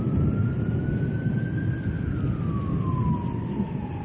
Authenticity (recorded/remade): recorded